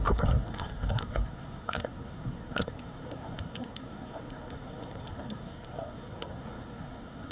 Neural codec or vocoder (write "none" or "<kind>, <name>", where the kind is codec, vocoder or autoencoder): codec, SNAC